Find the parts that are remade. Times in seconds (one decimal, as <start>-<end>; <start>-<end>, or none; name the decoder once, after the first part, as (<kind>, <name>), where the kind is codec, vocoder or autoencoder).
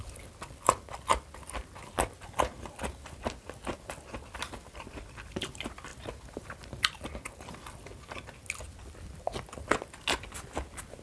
none